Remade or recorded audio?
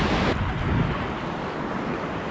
recorded